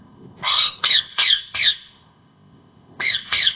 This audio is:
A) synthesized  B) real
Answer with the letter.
A